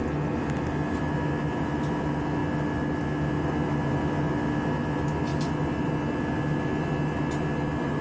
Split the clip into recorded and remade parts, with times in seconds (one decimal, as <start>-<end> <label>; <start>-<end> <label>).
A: 0.0-8.0 recorded